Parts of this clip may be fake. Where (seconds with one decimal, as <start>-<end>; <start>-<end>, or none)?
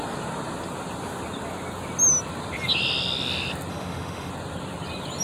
3.7-4.3